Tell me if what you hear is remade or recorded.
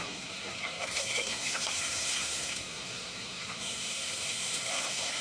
remade